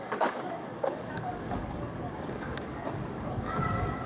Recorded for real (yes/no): no